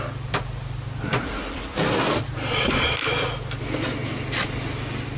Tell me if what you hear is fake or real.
real